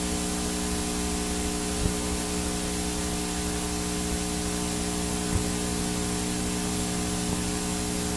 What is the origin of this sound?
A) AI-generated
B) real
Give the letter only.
B